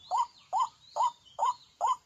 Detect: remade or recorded remade